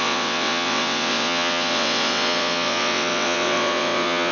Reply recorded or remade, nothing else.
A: remade